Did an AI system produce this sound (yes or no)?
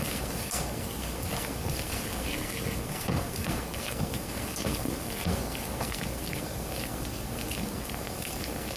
yes